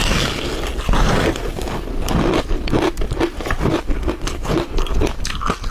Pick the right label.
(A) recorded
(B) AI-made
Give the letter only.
A